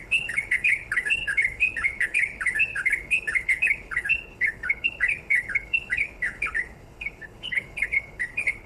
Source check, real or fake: fake